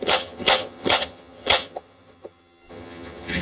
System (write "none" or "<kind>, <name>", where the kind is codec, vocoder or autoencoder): vocoder, HiFi-GAN